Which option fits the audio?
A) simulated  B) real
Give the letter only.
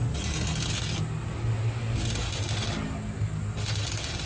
B